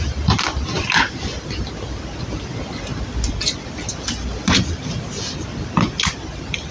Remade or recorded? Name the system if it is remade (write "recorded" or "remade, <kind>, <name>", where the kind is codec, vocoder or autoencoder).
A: recorded